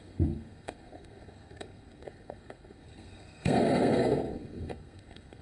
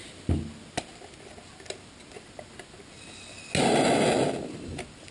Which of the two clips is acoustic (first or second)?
second